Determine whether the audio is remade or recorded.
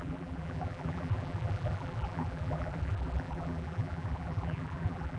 remade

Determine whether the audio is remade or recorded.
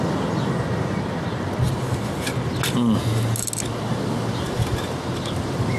recorded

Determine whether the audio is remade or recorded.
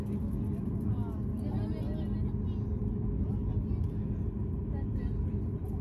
recorded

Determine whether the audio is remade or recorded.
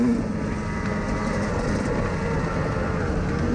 recorded